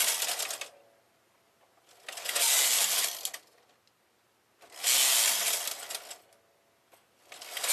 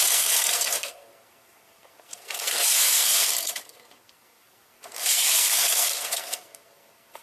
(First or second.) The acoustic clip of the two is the first